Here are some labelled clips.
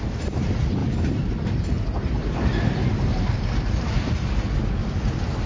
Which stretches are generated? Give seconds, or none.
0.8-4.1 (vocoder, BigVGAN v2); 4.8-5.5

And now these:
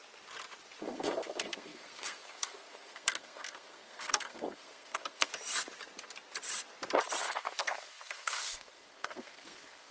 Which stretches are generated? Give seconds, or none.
0.8-5.3 (codec, SNAC); 7.2-9.9